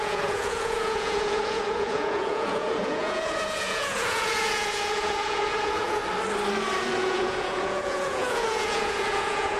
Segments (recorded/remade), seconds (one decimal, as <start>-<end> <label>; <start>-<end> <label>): 0.0-6.0 remade; 6.0-7.0 recorded; 7.0-9.6 remade